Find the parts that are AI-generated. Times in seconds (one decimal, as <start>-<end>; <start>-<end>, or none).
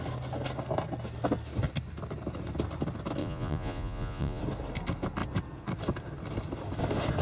3.2-4.4